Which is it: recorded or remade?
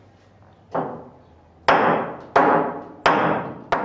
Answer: recorded